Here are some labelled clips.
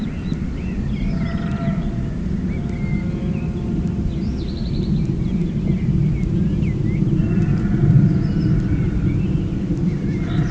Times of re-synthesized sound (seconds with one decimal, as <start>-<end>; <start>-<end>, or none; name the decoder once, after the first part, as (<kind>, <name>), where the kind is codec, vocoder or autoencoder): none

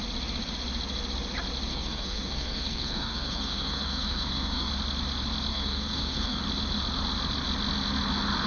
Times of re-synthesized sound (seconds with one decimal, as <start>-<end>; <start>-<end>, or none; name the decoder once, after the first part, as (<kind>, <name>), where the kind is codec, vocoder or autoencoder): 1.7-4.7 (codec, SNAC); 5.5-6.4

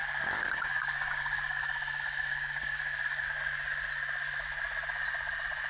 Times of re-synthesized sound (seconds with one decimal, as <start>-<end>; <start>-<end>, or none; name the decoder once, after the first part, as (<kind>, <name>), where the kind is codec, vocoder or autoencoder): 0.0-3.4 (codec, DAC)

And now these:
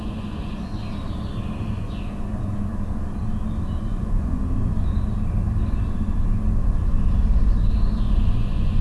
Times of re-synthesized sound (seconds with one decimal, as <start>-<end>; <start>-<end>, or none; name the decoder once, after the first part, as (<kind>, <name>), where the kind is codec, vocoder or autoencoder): 0.0-0.8 (vocoder, Vocos); 1.7-2.7; 3.8-4.4; 8.1-8.8